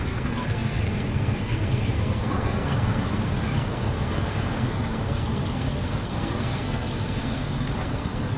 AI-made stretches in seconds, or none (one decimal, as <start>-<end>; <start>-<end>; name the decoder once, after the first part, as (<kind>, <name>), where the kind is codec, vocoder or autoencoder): 0.0-8.4 (codec, SNAC)